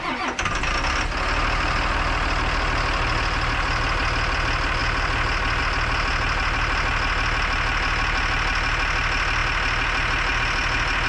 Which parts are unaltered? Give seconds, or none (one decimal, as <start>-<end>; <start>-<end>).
0.0-11.1